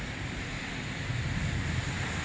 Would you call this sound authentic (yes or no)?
yes